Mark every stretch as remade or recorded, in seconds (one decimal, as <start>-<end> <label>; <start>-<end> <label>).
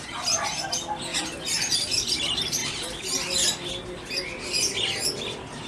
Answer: 0.0-5.7 recorded